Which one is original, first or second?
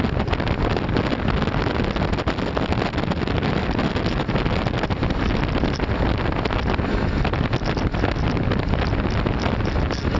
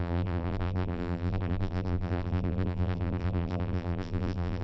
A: first